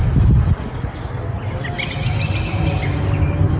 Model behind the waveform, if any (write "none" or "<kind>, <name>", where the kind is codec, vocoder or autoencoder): none